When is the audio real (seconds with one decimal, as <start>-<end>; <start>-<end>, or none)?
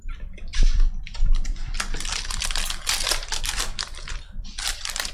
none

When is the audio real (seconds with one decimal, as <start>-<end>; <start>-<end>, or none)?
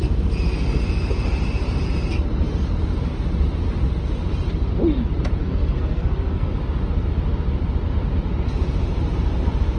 0.0-5.4; 6.5-9.8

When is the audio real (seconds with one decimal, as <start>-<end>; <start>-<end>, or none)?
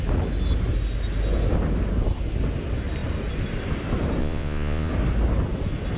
0.0-4.2; 4.9-6.0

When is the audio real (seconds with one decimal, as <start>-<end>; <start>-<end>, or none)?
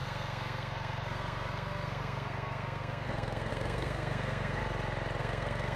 4.6-5.2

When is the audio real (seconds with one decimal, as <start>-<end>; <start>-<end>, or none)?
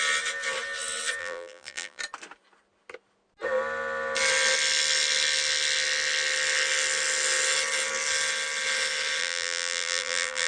0.0-1.2; 2.0-9.2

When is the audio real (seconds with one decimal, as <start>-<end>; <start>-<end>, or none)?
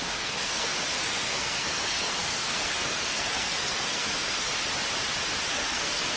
4.5-5.5